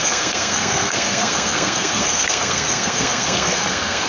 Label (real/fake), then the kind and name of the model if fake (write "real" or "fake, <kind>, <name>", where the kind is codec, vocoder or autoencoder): fake, codec, SNAC